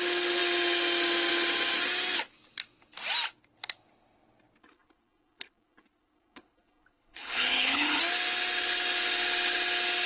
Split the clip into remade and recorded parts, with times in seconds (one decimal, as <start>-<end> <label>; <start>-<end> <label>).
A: 0.0-4.6 recorded; 4.6-8.0 remade; 8.0-10.1 recorded